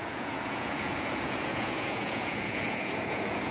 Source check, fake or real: fake